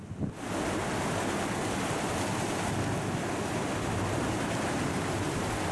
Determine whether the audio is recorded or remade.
recorded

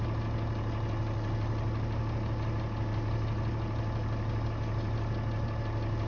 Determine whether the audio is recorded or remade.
recorded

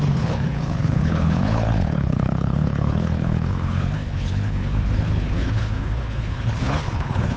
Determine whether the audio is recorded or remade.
remade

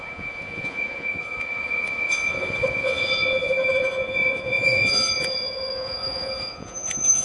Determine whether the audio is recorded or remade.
remade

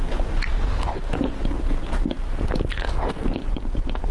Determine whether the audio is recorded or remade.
recorded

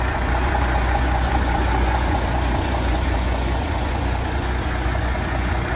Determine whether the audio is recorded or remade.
remade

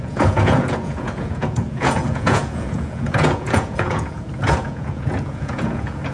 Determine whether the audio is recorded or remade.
remade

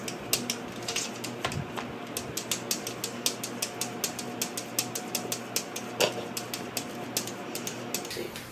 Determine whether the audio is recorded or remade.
recorded